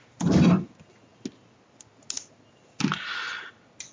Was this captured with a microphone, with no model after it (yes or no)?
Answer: yes